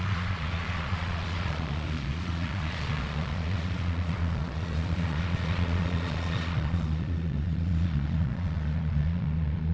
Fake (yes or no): yes